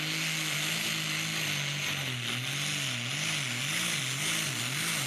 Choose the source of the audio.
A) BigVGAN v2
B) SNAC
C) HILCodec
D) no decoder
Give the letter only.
D